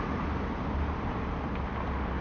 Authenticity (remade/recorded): recorded